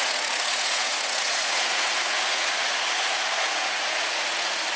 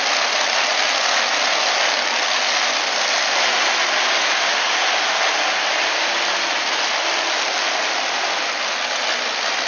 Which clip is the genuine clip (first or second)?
second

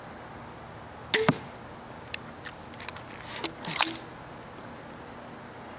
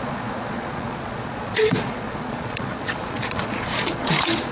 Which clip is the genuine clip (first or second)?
first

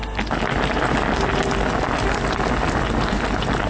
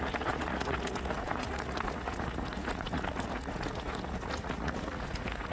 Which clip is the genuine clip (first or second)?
first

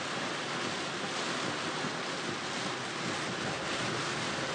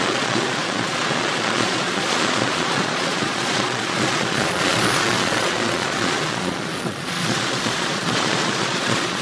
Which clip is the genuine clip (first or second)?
first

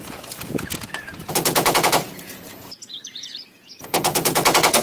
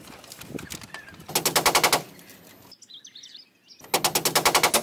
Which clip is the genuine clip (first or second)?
second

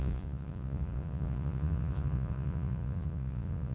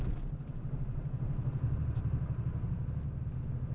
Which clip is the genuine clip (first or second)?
second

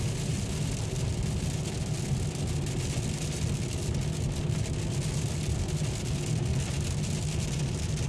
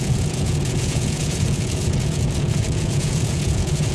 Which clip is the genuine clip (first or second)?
first